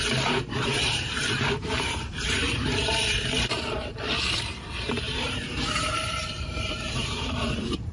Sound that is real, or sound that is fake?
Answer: fake